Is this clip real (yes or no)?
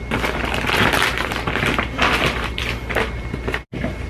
yes